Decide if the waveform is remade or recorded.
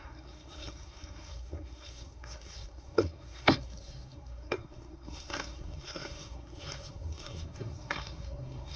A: remade